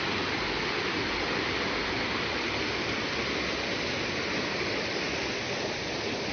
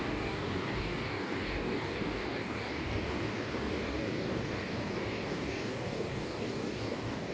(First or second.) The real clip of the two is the first